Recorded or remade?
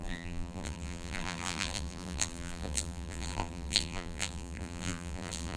remade